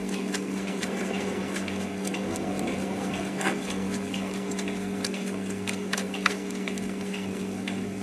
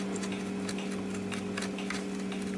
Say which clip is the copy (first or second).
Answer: first